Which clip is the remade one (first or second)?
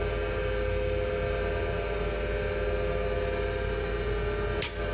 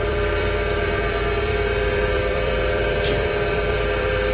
second